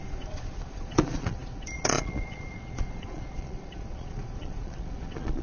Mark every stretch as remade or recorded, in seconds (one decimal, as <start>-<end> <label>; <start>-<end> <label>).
0.0-5.4 remade